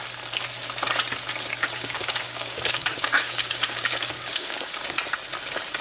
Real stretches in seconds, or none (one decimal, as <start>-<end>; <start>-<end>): 0.0-1.5; 4.9-5.8